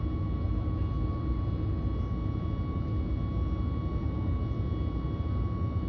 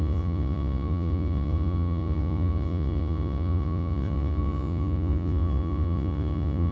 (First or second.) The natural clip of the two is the first